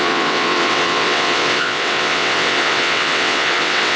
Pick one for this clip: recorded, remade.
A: remade